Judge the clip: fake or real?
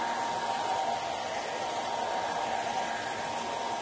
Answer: real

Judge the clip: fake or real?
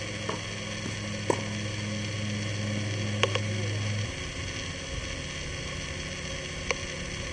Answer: real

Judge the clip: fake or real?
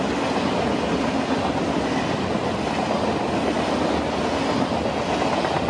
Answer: real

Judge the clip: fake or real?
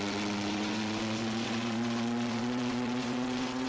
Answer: fake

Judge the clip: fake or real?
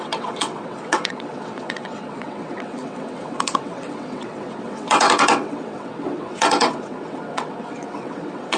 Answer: fake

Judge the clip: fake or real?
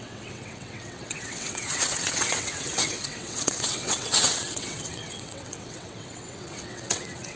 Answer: fake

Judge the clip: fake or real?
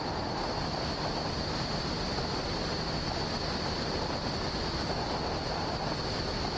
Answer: real